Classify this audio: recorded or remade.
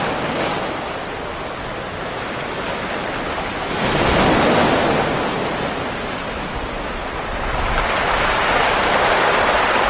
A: recorded